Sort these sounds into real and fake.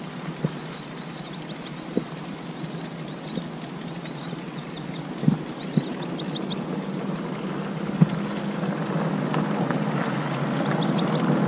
real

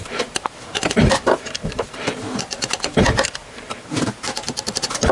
fake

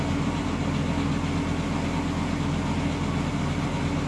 real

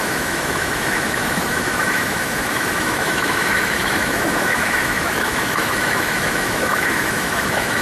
fake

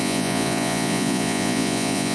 fake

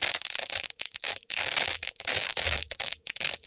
fake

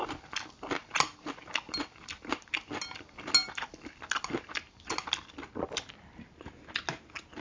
real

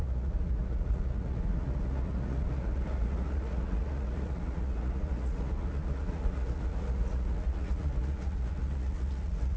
fake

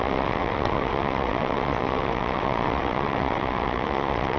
fake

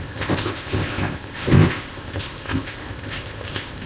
fake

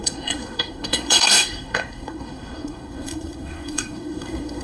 fake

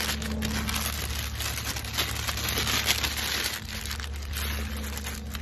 real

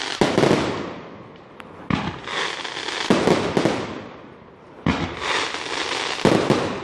real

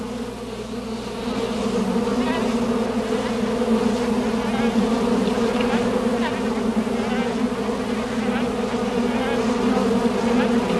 real